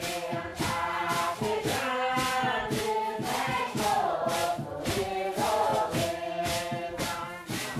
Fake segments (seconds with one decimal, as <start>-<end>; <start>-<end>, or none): 0.0-0.5; 2.8-4.4; 4.9-5.7; 7.0-7.8